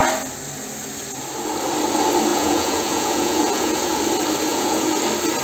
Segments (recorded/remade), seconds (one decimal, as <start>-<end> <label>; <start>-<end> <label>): 0.0-2.3 recorded; 2.3-4.0 remade; 4.0-4.5 recorded; 4.5-5.0 remade; 5.0-5.4 recorded